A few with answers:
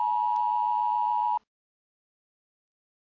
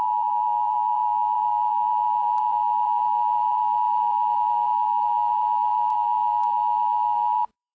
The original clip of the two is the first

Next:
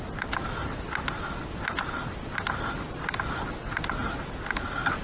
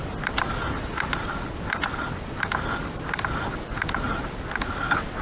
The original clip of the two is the first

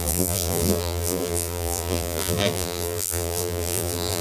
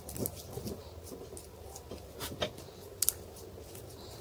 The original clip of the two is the second